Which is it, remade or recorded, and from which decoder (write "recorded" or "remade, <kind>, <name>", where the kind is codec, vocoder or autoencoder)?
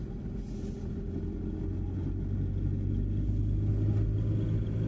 recorded